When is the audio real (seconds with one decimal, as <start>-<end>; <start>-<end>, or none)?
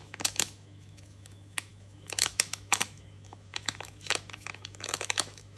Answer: none